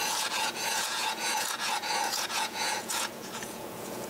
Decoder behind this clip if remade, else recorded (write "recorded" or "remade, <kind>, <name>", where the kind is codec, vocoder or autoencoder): remade, vocoder, Vocos